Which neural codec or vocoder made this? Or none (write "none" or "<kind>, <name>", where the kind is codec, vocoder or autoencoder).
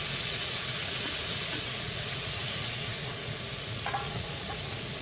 vocoder, Vocos